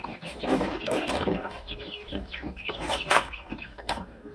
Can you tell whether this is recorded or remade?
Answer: remade